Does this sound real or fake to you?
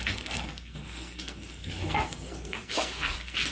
fake